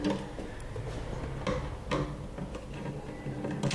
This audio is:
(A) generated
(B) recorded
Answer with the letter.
B